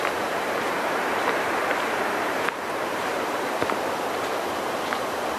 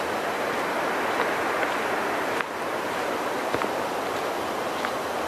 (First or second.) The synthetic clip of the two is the first